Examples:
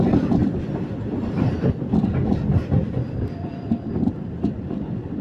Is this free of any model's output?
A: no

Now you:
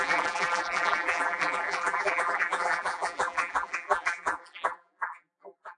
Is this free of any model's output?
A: no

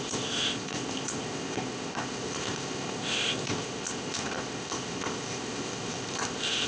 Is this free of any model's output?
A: no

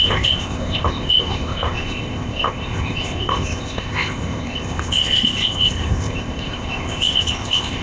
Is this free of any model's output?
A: no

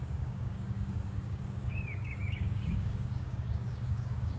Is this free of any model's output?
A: no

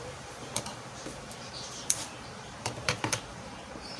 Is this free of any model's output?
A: no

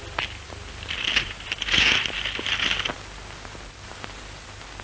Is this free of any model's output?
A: yes